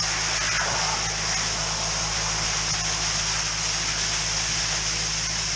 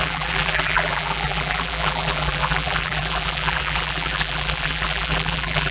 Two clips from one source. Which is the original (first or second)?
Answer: first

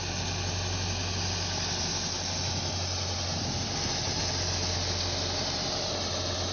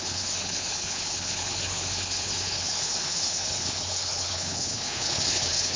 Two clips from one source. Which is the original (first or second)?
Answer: first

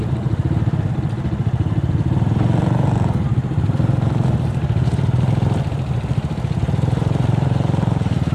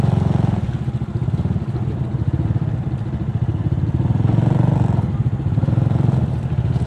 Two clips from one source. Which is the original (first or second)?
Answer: second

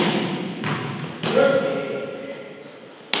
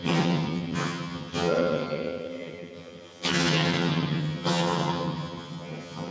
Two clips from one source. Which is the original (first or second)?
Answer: first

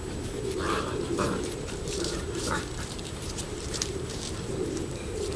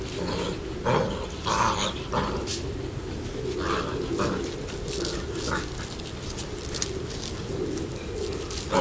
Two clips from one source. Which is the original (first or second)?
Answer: second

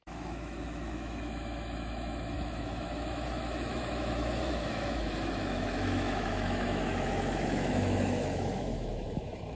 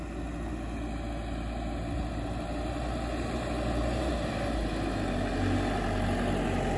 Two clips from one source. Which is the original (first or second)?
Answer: second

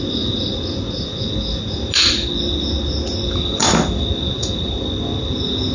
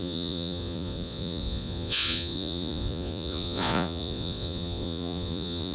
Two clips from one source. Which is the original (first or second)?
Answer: first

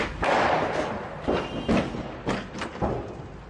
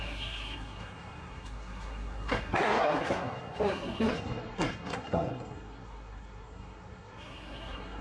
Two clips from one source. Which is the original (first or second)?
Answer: first